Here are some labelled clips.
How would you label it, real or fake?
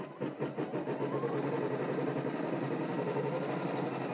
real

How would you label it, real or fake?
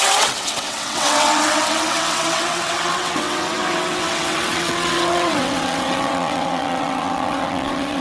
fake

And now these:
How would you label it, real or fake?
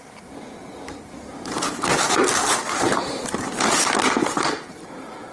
fake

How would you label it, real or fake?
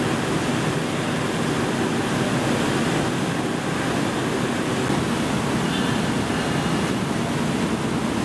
real